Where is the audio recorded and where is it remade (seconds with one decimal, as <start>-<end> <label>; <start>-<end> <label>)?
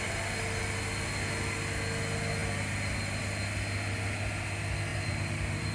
0.0-4.9 recorded; 4.9-5.7 remade